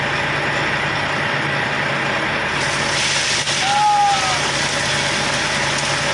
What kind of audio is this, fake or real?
real